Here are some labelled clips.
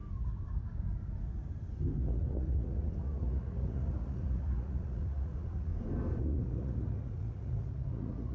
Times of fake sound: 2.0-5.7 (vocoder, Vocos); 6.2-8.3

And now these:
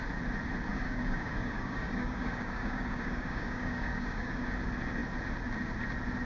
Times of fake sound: 0.7-4.4 (codec, DAC)

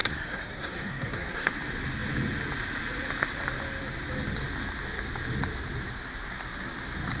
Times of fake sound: 0.0-1.5 (codec, SNAC)